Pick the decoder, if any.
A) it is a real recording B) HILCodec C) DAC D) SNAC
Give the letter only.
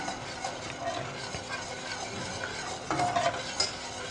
A